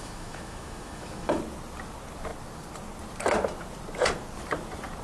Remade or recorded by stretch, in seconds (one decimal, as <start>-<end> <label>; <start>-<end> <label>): 0.0-1.4 remade; 1.4-5.0 recorded